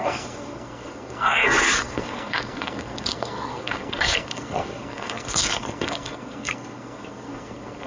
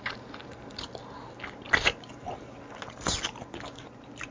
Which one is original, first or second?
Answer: second